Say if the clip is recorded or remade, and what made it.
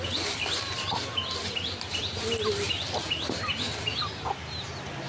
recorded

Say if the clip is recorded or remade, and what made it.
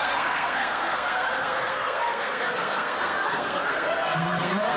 remade, codec, SNAC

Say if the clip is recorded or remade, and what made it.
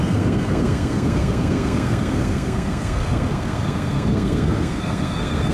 remade, codec, SNAC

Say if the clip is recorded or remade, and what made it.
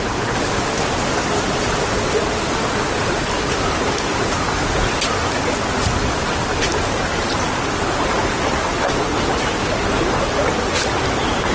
recorded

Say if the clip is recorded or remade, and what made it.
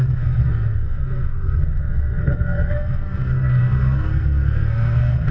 remade, codec, SNAC